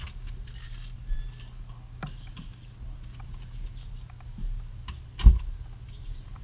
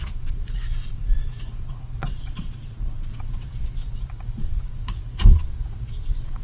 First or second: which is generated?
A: second